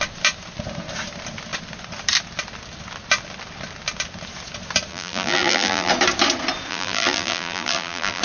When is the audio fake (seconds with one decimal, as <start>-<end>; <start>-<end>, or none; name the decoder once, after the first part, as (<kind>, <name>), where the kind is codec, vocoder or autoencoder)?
4.9-5.9 (vocoder, BigVGAN v2); 6.7-8.2